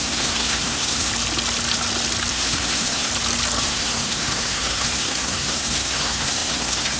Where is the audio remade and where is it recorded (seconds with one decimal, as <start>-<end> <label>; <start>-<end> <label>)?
0.0-1.1 remade; 1.1-2.3 recorded; 2.3-3.1 remade; 3.1-3.6 recorded; 3.6-7.0 remade